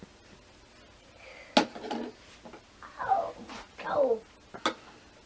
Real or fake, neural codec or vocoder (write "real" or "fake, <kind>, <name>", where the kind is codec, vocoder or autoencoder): real